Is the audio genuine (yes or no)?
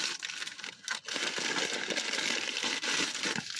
yes